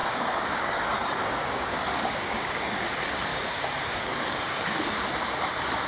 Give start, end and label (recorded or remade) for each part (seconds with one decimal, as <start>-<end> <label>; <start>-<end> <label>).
0.0-2.9 remade; 2.9-3.3 recorded; 3.3-4.8 remade; 4.8-5.9 recorded

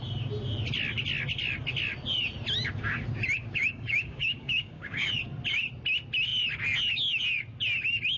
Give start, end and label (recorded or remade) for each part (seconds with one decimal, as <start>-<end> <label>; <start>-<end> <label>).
0.0-3.4 recorded; 3.4-5.1 remade; 5.1-8.2 recorded

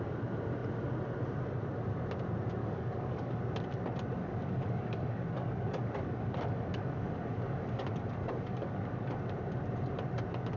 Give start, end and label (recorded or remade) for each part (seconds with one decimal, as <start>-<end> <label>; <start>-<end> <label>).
0.0-2.6 recorded; 2.6-3.4 remade; 3.4-4.2 recorded; 4.2-9.2 remade; 9.2-10.6 recorded

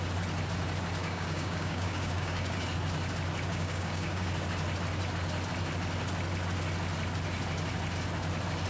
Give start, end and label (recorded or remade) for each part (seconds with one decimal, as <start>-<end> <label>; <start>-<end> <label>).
0.0-1.0 recorded; 1.0-2.6 remade; 2.6-3.5 recorded; 3.5-4.3 remade; 4.3-8.7 recorded

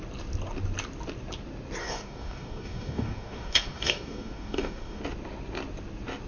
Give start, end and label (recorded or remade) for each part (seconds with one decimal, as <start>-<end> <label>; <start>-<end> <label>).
0.0-1.8 recorded; 1.8-5.0 remade; 5.0-6.3 recorded

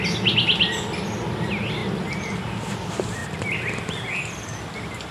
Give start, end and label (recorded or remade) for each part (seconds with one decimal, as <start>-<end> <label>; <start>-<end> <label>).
0.0-5.1 recorded